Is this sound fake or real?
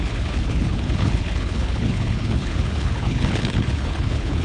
fake